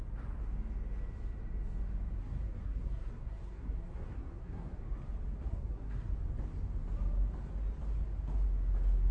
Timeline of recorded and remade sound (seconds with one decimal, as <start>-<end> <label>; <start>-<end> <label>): 0.0-2.2 recorded; 2.2-4.8 remade; 4.8-5.5 recorded; 5.5-6.1 remade; 6.1-9.1 recorded